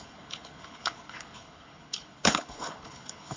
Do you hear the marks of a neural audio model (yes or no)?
yes